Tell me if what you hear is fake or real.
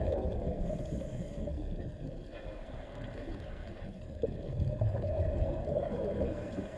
fake